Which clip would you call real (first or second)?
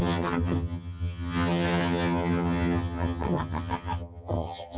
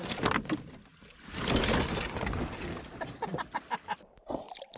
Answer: second